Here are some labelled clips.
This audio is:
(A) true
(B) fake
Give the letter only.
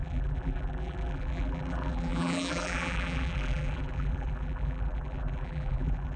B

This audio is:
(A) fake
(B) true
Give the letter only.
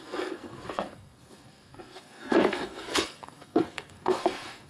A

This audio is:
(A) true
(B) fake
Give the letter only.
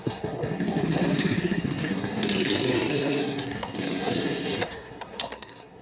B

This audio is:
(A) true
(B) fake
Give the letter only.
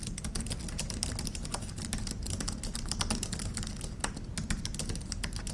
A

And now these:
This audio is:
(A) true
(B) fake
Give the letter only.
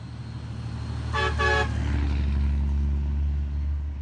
A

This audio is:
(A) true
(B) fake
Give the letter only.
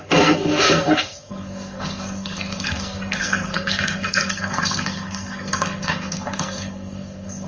B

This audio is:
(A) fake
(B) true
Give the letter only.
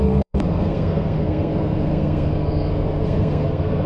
A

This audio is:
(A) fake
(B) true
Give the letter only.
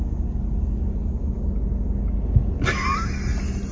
B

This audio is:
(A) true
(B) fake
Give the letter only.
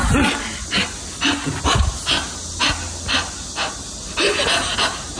A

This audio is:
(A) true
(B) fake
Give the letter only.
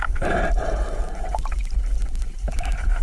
B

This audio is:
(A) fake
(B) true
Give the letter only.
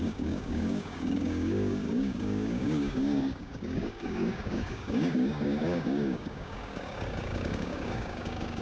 A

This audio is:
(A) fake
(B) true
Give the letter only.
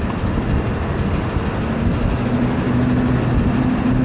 B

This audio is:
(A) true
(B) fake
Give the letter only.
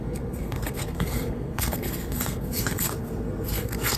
B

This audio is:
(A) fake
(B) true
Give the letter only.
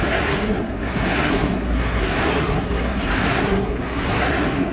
A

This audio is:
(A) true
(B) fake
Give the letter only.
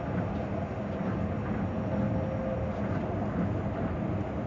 A